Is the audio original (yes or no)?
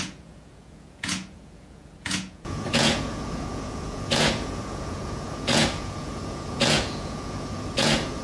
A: no